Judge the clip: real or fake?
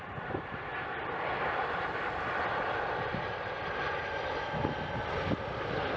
fake